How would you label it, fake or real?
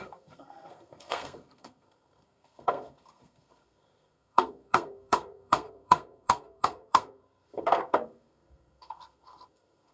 fake